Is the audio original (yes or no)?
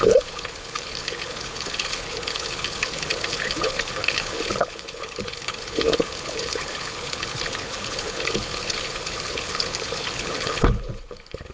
no